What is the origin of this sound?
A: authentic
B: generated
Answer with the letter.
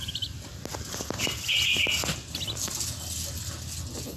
A